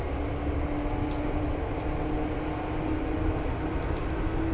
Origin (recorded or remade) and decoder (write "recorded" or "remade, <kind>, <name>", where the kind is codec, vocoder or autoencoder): recorded